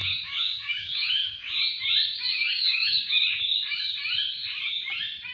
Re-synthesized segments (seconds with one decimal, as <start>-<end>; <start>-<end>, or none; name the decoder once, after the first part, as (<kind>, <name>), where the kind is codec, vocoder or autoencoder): 0.0-1.5 (codec, DAC); 2.3-3.1